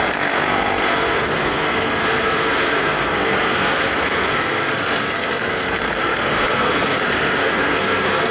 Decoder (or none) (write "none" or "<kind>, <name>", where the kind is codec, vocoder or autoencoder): codec, SNAC